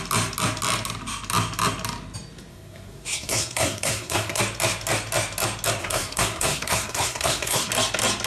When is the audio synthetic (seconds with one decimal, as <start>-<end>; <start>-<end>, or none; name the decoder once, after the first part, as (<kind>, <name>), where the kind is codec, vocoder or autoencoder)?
2.5-4.4 (codec, SNAC); 5.8-7.7